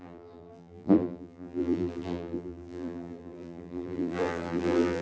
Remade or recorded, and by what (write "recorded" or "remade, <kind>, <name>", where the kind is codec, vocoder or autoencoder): remade, vocoder, BigVGAN v2